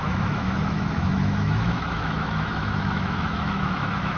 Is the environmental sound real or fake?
fake